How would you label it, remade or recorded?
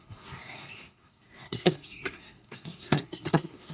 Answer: remade